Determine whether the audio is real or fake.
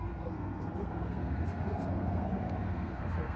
fake